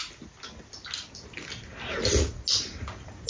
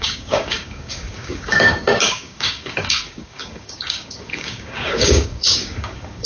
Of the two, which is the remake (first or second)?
second